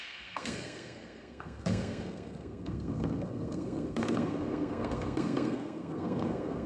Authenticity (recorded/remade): remade